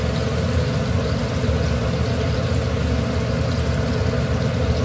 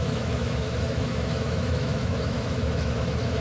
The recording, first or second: first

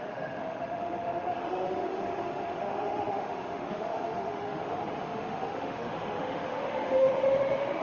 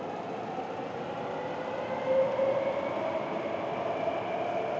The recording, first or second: second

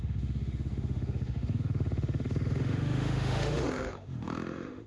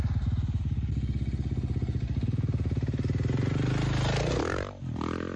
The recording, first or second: second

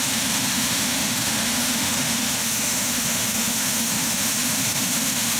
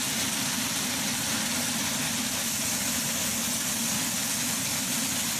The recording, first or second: second